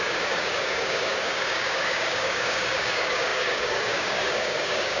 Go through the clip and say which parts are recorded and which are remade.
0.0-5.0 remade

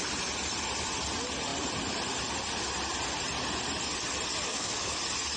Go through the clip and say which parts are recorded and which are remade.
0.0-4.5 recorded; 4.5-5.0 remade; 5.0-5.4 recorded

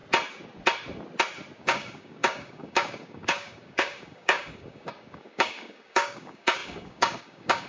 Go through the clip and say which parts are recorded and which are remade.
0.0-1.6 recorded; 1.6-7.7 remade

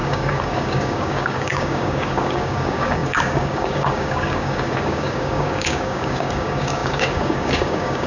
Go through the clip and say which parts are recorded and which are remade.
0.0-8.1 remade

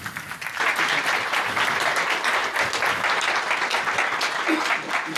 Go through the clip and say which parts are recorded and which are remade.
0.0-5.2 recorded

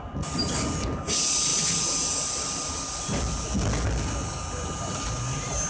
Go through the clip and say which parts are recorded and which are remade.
0.0-5.7 recorded

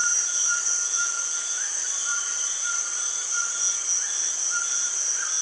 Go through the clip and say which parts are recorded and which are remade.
0.0-5.4 recorded